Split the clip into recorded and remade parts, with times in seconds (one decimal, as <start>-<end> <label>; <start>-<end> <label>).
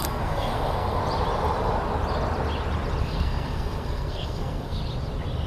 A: 0.0-1.0 remade; 1.0-3.0 recorded; 3.0-4.8 remade; 4.8-5.5 recorded